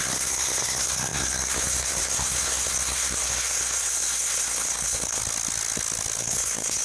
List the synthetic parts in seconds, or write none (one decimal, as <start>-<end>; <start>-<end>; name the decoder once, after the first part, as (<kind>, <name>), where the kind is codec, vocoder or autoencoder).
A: 0.0-5.2 (codec, SNAC); 6.2-6.8